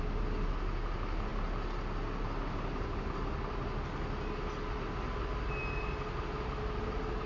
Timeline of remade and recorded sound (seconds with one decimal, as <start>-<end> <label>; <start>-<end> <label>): 0.0-7.3 recorded

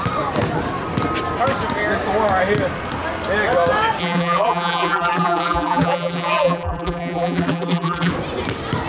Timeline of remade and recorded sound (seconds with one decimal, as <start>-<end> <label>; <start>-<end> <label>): 0.0-4.0 recorded; 4.0-8.1 remade; 8.1-8.9 recorded

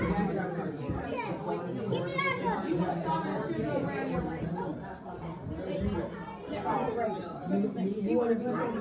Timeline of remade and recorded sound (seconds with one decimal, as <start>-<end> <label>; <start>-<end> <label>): 0.0-8.8 recorded